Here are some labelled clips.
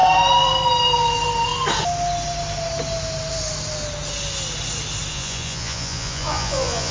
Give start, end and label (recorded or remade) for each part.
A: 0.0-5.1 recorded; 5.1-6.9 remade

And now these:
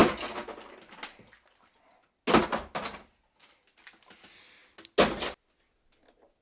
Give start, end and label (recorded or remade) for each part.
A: 0.0-6.4 recorded